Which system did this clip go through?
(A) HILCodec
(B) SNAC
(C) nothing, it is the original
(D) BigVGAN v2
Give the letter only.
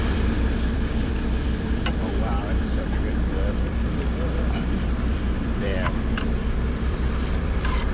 D